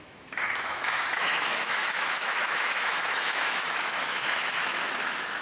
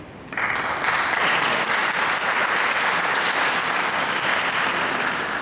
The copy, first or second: first